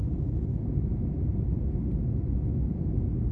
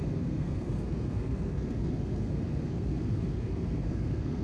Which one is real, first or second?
first